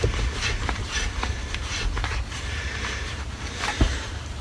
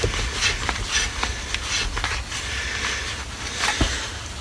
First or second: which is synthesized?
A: first